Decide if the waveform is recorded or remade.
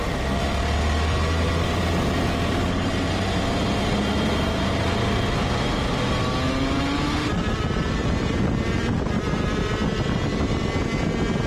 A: recorded